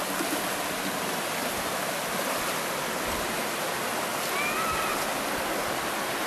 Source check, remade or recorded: recorded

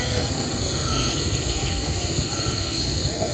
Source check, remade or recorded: remade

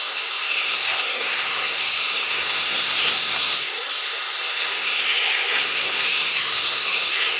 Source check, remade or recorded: remade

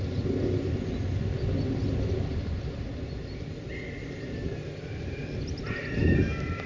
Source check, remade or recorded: recorded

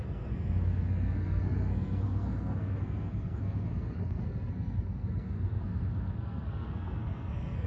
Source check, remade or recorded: remade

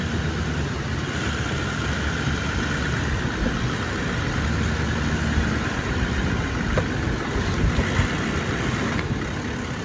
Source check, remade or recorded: recorded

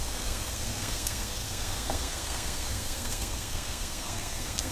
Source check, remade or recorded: remade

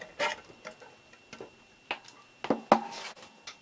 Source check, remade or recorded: recorded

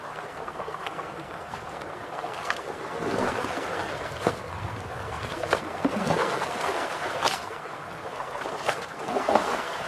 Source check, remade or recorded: remade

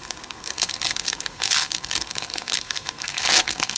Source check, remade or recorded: remade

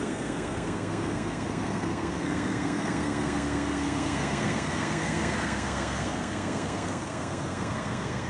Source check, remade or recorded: remade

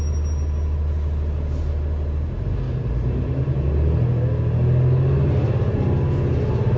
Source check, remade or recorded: recorded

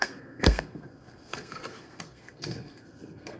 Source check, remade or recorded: remade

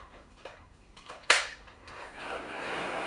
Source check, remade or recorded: remade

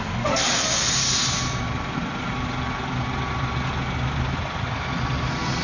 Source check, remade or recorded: recorded